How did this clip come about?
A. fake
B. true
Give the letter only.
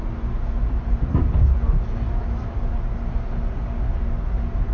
B